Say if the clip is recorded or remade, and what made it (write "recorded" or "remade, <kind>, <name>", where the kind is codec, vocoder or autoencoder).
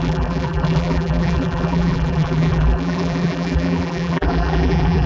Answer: remade, vocoder, BigVGAN v2